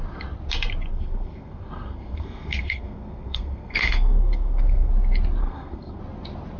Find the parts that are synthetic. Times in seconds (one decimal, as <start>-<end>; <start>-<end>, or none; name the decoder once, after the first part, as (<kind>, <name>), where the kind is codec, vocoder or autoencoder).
0.9-4.9 (codec, SNAC); 5.4-6.0